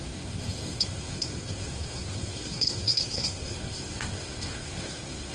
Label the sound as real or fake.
fake